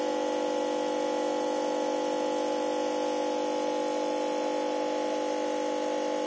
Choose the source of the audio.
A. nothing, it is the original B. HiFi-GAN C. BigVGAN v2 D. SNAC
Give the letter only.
A